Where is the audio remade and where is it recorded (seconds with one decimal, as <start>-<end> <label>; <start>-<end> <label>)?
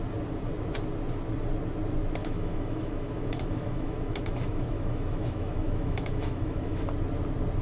0.0-2.2 recorded; 2.2-6.8 remade; 6.8-7.6 recorded